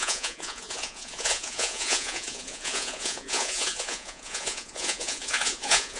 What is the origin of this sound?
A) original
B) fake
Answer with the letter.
B